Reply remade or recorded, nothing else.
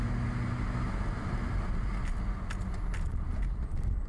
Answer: recorded